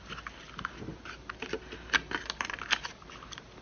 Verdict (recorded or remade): recorded